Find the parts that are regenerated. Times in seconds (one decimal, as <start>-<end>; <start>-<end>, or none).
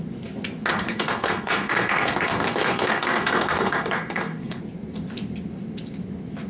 0.7-4.6